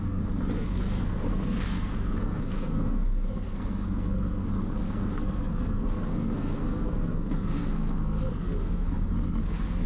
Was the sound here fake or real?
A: fake